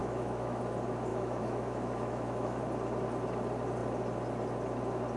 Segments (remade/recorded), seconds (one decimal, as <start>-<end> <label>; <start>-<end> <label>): 0.0-0.6 remade; 0.6-1.1 recorded; 1.1-2.6 remade; 2.6-5.2 recorded